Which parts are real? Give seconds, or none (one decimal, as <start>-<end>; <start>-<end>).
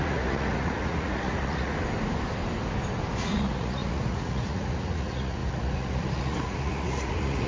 1.7-3.2